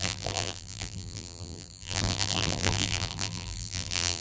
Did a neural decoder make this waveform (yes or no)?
yes